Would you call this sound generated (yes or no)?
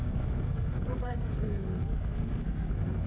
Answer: yes